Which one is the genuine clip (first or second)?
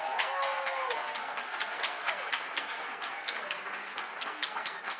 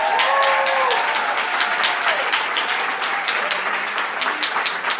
second